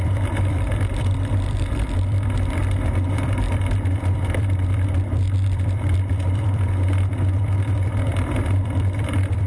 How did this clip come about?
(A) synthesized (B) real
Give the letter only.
A